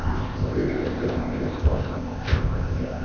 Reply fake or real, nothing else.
fake